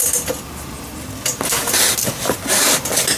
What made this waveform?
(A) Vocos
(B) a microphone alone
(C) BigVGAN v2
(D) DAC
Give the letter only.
B